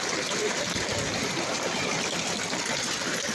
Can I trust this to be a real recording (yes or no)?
yes